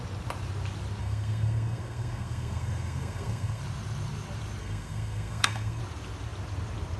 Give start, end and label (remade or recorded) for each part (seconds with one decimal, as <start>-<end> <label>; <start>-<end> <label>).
0.0-1.0 recorded; 1.0-3.6 remade; 3.6-4.6 recorded; 4.6-5.8 remade; 5.8-7.0 recorded

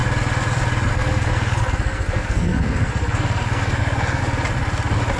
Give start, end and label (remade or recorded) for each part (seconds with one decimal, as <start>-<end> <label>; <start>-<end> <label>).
0.0-0.9 recorded; 0.9-4.2 remade; 4.2-5.2 recorded